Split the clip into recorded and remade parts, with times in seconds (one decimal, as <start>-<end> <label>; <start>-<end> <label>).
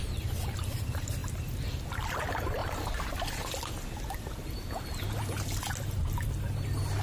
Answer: 0.0-2.6 remade; 2.6-7.0 recorded